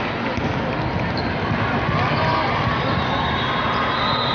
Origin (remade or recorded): recorded